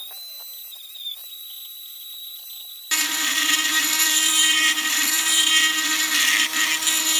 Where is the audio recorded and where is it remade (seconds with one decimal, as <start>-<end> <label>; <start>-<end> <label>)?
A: 0.0-1.2 recorded; 1.2-5.5 remade; 5.5-7.2 recorded